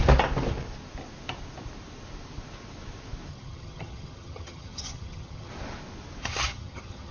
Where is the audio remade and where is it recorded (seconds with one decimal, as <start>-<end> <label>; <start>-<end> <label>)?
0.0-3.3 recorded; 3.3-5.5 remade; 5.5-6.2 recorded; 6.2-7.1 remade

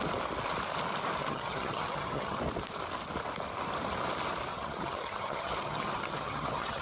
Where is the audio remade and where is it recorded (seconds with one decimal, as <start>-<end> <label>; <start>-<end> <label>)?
0.0-1.2 recorded; 1.2-2.4 remade; 2.4-4.5 recorded; 4.5-6.8 remade

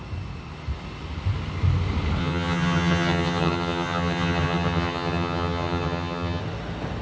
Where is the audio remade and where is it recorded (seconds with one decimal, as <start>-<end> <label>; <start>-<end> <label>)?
0.0-2.2 recorded; 2.2-6.4 remade; 6.4-7.0 recorded

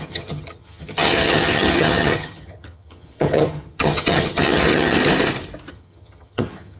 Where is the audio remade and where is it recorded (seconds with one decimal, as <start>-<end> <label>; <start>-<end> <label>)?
0.0-5.0 remade; 5.0-5.7 recorded; 5.7-6.8 remade

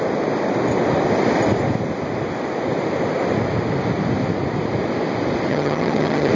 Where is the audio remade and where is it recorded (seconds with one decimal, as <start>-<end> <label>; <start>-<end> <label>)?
0.0-5.5 recorded; 5.5-6.3 remade

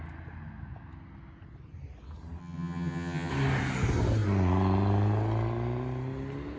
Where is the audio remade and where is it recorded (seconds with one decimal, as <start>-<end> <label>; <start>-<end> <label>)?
0.0-2.4 recorded; 2.4-3.3 remade; 3.3-6.6 recorded